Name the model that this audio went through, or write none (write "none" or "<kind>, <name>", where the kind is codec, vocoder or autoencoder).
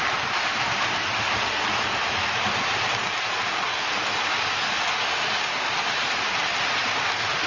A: none